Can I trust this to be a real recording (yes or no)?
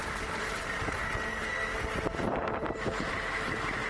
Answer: yes